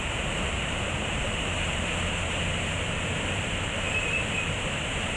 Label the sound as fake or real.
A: fake